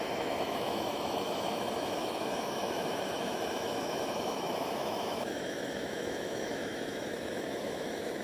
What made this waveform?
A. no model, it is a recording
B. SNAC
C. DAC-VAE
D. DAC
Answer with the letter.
C